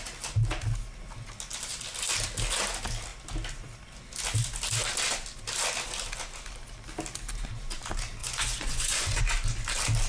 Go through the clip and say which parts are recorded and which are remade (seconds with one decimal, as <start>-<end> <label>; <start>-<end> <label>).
0.0-8.2 recorded; 8.2-9.2 remade; 9.2-10.1 recorded